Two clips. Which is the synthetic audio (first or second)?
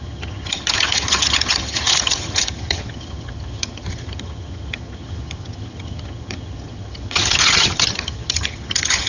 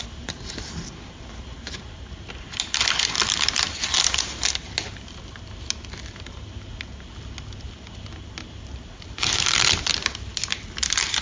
first